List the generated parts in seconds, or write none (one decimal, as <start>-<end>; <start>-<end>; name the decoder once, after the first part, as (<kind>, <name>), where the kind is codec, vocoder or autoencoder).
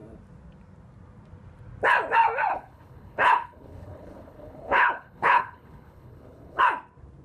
2.5-6.6 (codec, HILCodec)